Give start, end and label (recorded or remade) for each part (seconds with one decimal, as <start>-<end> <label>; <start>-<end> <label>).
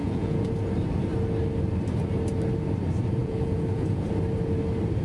0.0-0.5 remade; 0.5-3.2 recorded; 3.2-4.0 remade; 4.0-5.0 recorded